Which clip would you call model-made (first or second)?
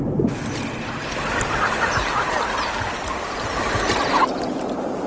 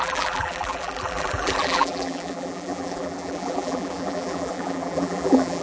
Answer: second